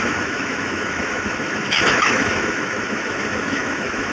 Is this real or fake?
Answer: fake